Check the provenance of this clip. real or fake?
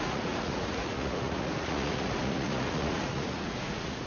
fake